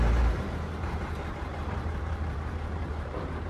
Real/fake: fake